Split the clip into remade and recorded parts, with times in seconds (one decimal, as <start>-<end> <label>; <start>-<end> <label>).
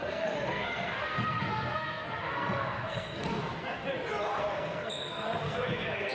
0.0-3.8 remade; 3.8-4.3 recorded; 4.3-6.1 remade